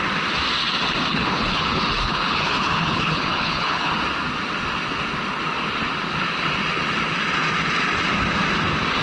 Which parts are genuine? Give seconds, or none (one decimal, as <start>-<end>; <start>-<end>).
0.0-1.1; 3.9-9.0